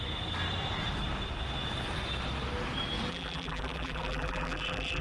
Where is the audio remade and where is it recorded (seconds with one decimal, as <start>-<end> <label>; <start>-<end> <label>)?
0.0-3.1 recorded; 3.1-5.0 remade